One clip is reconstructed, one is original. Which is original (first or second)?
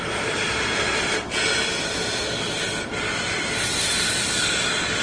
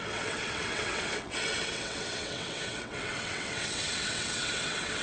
first